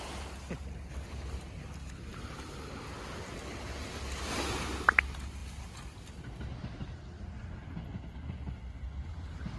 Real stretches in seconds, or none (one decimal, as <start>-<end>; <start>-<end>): 0.0-9.6